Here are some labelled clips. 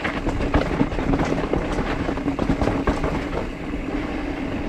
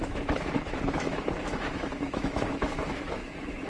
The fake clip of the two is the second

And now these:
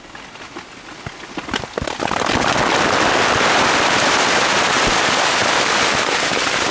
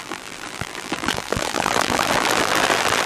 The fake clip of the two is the second